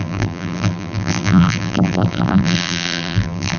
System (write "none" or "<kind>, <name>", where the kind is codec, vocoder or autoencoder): vocoder, BigVGAN v2